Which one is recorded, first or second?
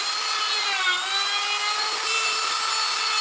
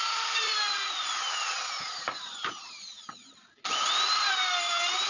second